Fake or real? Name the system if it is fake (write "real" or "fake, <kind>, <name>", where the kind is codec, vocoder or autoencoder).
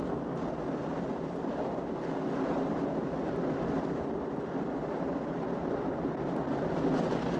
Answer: real